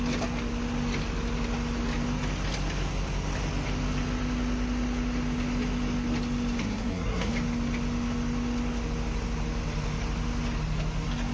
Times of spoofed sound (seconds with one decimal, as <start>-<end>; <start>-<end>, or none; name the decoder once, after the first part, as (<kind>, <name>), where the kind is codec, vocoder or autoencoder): 6.6-7.3 (codec, SNAC)